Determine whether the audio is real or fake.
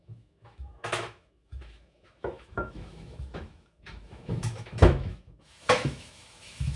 fake